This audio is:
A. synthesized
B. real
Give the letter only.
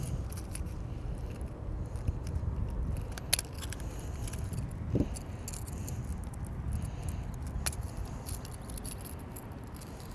B